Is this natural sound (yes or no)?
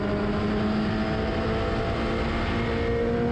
yes